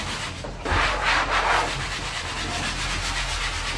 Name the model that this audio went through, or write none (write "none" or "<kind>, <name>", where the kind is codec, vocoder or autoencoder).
none